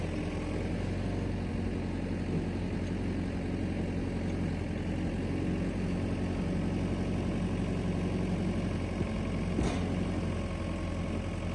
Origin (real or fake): real